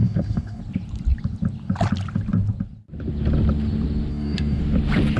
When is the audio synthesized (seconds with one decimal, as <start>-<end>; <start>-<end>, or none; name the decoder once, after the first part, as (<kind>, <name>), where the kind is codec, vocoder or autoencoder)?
0.0-0.6 (codec, DAC); 4.1-4.6